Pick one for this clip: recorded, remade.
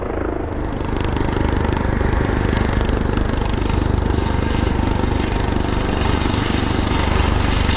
recorded